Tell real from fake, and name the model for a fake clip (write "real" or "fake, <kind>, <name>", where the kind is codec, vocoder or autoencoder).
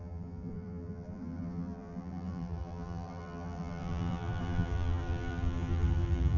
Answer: fake, vocoder, BigVGAN v2